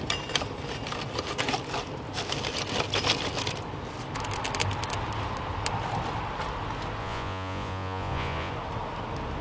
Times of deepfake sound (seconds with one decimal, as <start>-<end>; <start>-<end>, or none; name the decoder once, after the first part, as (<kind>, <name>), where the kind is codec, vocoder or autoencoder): 7.0-8.5 (vocoder, Vocos)